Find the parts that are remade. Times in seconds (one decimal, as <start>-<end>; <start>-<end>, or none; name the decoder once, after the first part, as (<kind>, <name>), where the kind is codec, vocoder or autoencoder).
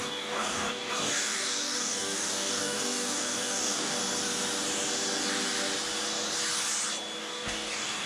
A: 0.0-4.0 (codec, DAC); 7.2-8.1